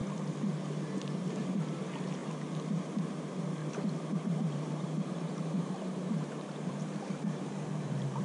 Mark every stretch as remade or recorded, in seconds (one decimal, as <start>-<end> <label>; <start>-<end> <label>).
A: 0.0-3.6 recorded; 3.6-7.5 remade; 7.5-8.2 recorded